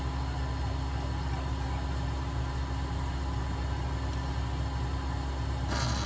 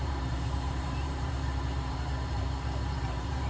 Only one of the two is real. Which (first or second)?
first